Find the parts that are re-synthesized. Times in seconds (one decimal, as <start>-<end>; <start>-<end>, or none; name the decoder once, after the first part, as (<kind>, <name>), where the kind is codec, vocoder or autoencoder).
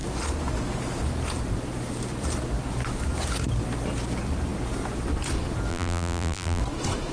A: 5.7-6.6 (vocoder, BigVGAN v2)